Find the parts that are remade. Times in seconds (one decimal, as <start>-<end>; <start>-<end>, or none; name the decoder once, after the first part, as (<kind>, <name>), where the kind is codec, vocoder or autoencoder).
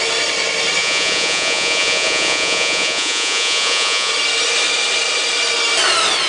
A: 0.8-4.1 (vocoder, Vocos)